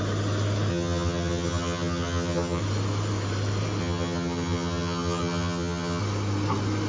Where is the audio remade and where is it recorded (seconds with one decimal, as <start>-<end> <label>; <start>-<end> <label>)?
0.0-0.7 recorded; 0.7-2.6 remade; 2.6-3.8 recorded; 3.8-6.0 remade; 6.0-6.9 recorded